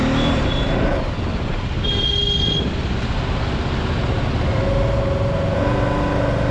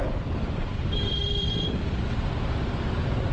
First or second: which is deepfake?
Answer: second